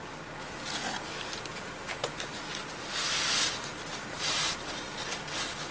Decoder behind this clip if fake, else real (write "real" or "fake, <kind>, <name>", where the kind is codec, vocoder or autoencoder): real